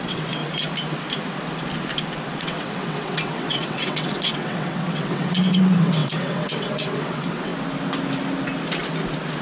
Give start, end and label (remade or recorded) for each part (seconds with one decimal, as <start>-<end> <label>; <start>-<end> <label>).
0.0-0.4 remade; 0.4-2.4 recorded; 2.4-7.5 remade; 7.5-9.4 recorded